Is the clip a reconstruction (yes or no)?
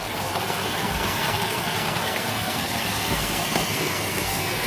yes